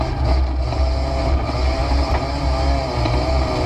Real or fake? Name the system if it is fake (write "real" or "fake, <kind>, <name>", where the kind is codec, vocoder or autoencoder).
real